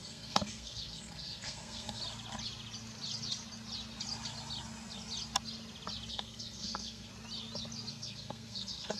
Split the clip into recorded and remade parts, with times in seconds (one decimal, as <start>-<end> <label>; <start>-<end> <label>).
0.0-2.0 remade; 2.0-6.1 recorded; 6.1-7.1 remade; 7.1-7.9 recorded; 7.9-9.0 remade

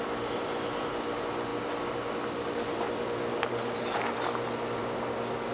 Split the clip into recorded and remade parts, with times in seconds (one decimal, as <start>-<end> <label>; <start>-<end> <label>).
0.0-5.5 recorded

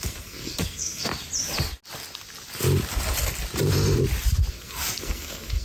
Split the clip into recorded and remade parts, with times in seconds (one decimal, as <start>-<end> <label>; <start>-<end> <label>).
0.0-1.1 remade; 1.1-4.5 recorded; 4.5-5.6 remade

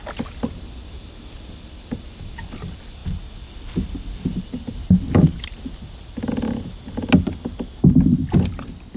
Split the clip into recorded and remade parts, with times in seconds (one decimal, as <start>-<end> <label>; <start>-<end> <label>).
0.0-9.0 recorded